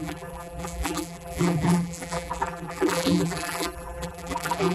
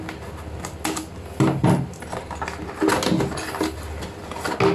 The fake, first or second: first